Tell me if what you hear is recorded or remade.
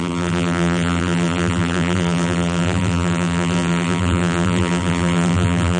remade